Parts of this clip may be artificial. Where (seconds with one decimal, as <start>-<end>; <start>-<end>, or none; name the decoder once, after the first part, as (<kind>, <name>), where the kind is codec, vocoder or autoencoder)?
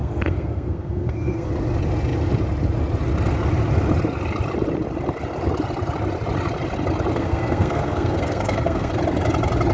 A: 0.0-1.5 (codec, SNAC); 7.1-8.9